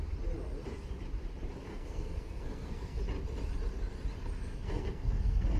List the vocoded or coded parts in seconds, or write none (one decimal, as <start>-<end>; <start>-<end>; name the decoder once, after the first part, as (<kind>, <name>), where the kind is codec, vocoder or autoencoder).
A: 1.7-3.0 (codec, SNAC); 4.4-5.6